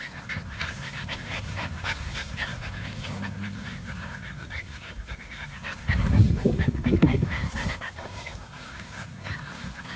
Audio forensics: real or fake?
fake